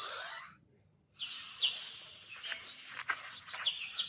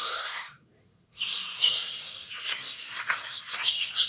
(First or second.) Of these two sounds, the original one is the first